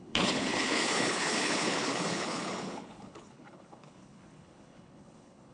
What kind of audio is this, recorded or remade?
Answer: remade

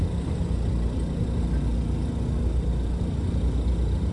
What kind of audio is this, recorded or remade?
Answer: recorded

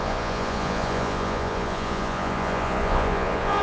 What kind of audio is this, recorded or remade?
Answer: remade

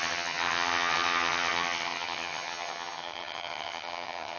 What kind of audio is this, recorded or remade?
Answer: remade